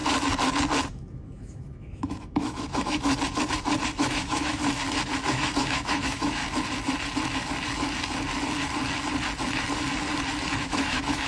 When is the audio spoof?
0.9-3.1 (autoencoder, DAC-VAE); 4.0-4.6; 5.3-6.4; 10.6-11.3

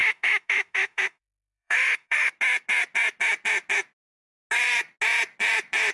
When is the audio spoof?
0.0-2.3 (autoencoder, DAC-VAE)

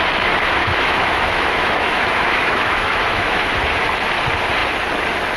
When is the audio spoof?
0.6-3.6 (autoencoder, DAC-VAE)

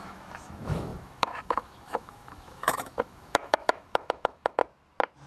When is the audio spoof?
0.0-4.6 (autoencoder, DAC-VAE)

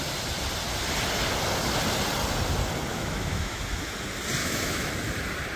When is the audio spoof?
2.9-3.9 (autoencoder, DAC-VAE); 4.4-4.9

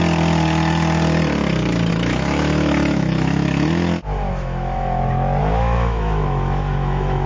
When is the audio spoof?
1.9-5.0 (autoencoder, DAC-VAE); 5.4-7.3